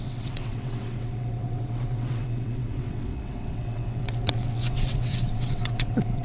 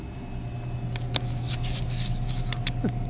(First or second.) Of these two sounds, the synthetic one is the first